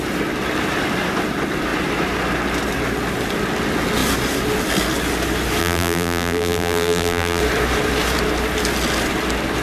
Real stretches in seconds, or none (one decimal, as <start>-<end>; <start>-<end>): 0.0-5.6; 7.4-9.6